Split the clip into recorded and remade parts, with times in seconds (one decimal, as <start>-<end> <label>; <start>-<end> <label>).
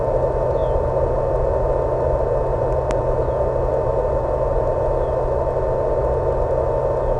0.0-7.2 recorded